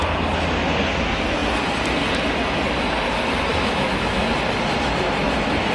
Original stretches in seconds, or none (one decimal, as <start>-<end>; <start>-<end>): 0.0-3.5; 4.3-5.7

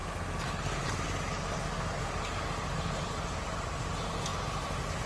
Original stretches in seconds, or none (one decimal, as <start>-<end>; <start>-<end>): 0.0-5.1